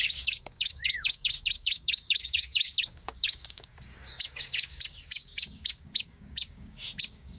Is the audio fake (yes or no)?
yes